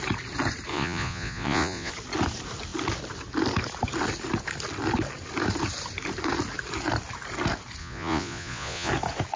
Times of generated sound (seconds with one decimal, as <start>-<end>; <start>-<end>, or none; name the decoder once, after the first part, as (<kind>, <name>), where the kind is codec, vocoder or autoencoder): 0.7-1.9 (vocoder, Vocos); 7.8-8.9